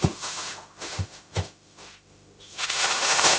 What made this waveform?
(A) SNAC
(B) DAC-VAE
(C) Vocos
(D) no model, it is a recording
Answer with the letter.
B